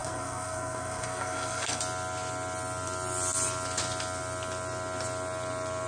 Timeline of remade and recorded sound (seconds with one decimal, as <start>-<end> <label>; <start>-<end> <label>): 0.0-1.8 remade; 1.8-5.9 recorded